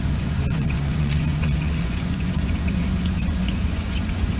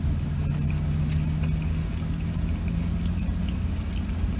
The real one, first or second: second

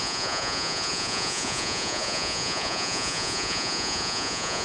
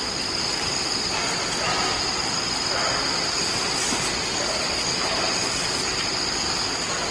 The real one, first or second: second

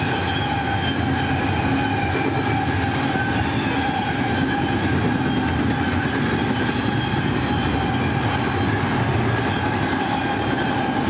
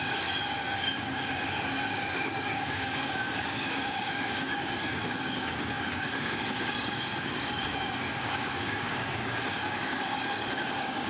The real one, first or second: first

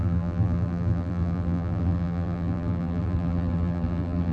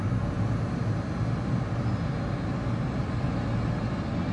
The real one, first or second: second